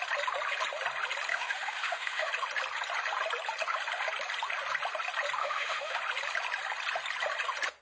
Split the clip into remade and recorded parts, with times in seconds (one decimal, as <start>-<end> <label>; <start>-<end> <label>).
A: 0.0-1.3 recorded; 1.3-2.3 remade; 2.3-5.4 recorded; 5.4-6.0 remade; 6.0-7.8 recorded